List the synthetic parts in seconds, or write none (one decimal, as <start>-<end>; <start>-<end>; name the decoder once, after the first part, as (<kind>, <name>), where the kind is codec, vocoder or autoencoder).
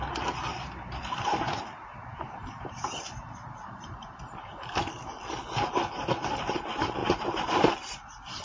0.5-5.0 (vocoder, BigVGAN v2); 7.0-7.7